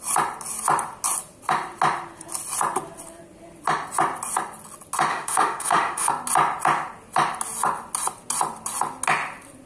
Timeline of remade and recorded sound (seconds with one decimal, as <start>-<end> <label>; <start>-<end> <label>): 0.0-5.1 recorded; 5.1-6.1 remade; 6.1-9.7 recorded